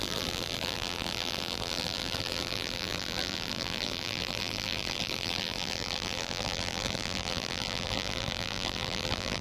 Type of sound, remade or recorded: remade